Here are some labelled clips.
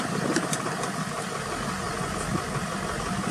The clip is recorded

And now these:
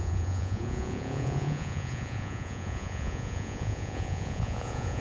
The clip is remade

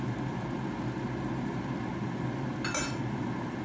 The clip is recorded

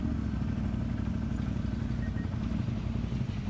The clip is recorded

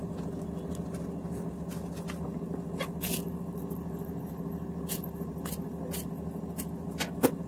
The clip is recorded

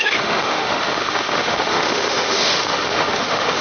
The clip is remade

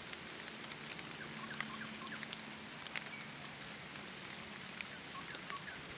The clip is recorded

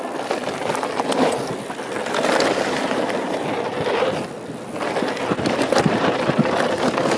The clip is recorded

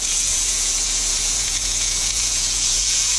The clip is remade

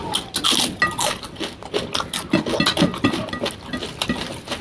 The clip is recorded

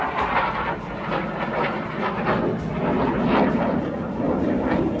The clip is recorded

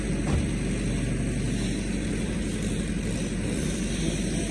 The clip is recorded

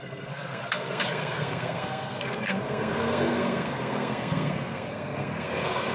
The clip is remade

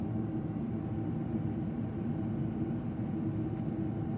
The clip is recorded